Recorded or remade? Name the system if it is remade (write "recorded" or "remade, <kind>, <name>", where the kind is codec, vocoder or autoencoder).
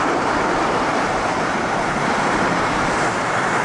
remade, vocoder, BigVGAN v2